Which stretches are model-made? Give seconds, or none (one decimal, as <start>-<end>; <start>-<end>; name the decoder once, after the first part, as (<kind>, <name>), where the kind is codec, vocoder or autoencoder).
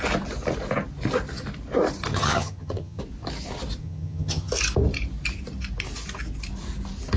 2.1-3.0 (vocoder, HiFi-GAN); 3.8-4.5